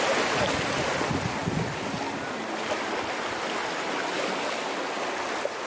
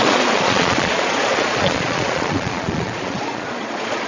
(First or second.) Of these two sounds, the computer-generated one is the second